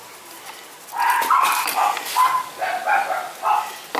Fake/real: real